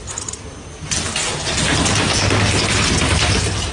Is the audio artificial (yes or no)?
no